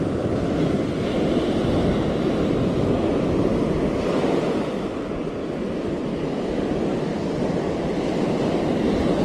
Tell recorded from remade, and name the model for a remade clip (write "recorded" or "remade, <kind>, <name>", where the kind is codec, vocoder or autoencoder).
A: recorded